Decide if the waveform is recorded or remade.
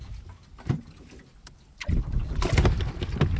recorded